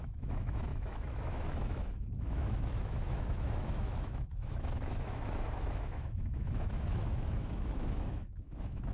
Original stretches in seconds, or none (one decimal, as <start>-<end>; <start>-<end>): none